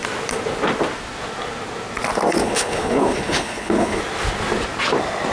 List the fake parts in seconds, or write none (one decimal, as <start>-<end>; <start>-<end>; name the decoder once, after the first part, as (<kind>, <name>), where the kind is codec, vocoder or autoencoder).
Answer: 2.4-4.0 (codec, HILCodec)